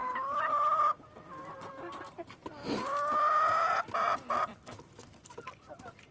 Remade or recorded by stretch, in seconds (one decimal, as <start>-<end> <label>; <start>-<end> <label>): 0.0-3.7 remade; 3.7-6.1 recorded